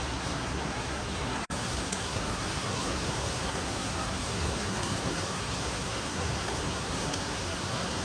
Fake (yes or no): yes